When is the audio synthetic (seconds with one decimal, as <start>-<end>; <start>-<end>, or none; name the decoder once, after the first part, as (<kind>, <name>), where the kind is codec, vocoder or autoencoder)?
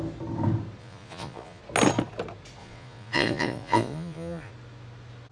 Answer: 0.8-1.6 (vocoder, Vocos); 2.6-4.5